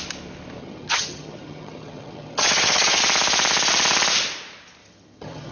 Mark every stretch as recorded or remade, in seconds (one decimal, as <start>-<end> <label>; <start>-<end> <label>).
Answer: 0.0-0.6 recorded; 0.6-3.0 remade; 3.0-4.8 recorded; 4.8-5.5 remade